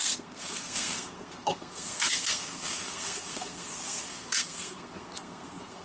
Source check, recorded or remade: remade